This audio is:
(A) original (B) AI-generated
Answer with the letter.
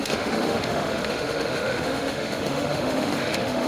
B